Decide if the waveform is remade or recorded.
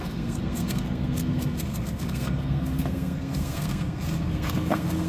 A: remade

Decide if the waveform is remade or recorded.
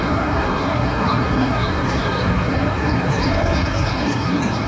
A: remade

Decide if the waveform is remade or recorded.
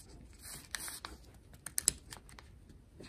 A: recorded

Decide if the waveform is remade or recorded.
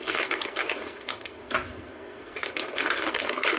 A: remade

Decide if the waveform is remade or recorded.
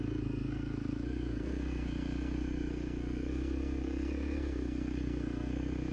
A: remade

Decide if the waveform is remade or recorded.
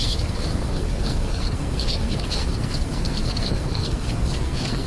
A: remade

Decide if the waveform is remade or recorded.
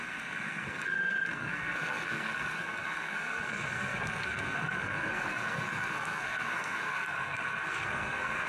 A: remade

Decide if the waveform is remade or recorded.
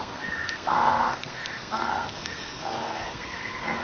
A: remade